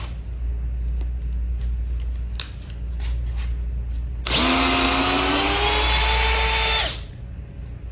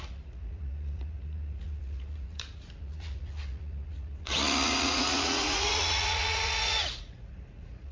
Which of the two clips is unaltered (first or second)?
first